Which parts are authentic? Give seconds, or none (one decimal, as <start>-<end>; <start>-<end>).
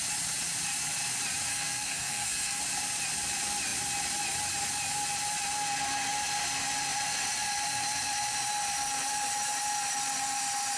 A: 0.0-1.5; 2.6-10.8